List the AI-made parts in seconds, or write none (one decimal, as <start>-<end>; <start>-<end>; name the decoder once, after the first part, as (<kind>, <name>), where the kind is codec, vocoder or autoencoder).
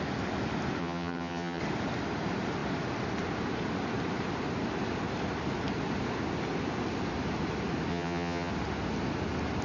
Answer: 0.8-1.6 (vocoder, HiFi-GAN); 7.9-8.5